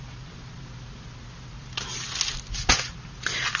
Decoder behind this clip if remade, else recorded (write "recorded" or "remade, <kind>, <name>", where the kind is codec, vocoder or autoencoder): recorded